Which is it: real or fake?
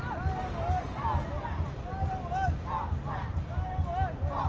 real